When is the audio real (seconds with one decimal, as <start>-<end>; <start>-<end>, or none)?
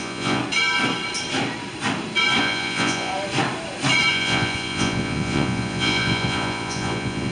0.4-2.4; 3.1-4.1